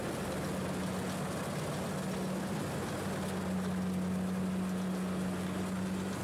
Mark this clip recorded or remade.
recorded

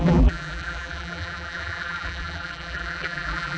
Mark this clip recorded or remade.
remade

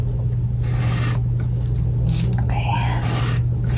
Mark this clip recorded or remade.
recorded